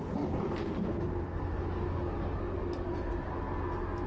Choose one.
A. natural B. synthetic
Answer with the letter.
A